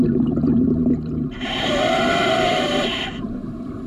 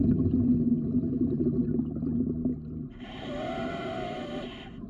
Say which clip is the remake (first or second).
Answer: first